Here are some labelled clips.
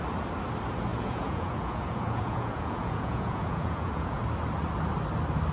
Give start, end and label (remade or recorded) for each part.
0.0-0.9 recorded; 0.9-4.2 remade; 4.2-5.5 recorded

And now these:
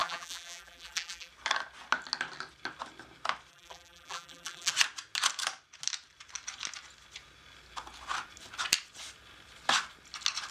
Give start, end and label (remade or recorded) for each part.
0.0-1.3 remade; 1.3-3.5 recorded; 3.5-4.7 remade; 4.7-10.5 recorded

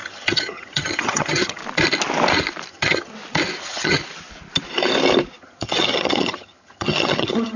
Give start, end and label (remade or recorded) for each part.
0.0-1.6 remade; 1.6-2.7 recorded; 2.7-3.1 remade; 3.1-3.6 recorded; 3.6-4.0 remade; 4.0-5.4 recorded; 5.4-7.6 remade

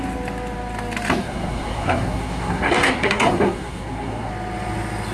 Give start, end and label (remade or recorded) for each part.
0.0-1.2 recorded; 1.2-4.3 remade; 4.3-5.1 recorded

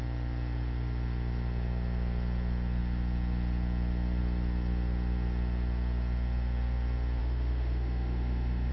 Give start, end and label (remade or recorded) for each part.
0.0-7.2 recorded; 7.2-8.7 remade

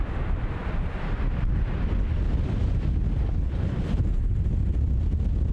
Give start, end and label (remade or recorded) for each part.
0.0-3.2 recorded; 3.2-3.8 remade; 3.8-5.5 recorded

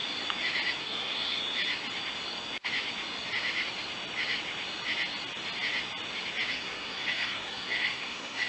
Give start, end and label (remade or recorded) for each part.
0.0-0.8 recorded; 0.8-1.4 remade; 1.4-6.5 recorded; 6.5-8.5 remade